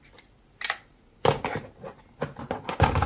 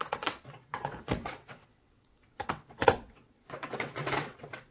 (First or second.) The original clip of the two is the first